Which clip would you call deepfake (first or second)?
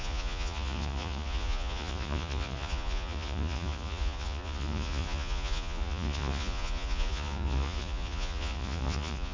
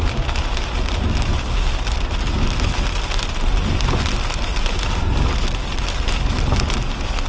first